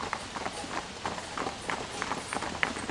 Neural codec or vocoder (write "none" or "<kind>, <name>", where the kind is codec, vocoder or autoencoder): none